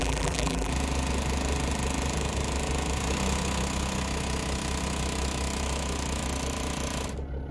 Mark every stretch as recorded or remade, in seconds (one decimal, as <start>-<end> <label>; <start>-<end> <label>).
0.0-0.7 remade; 0.7-7.5 recorded